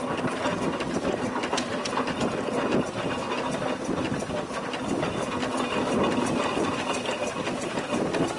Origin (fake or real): real